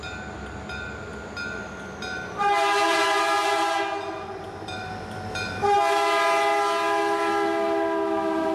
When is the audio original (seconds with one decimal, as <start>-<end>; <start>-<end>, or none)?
0.0-8.5